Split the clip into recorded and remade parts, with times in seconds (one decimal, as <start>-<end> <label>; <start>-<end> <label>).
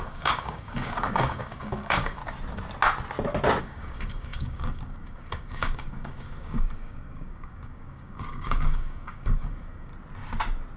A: 0.0-2.2 remade; 2.2-3.6 recorded; 3.6-9.9 remade; 9.9-10.8 recorded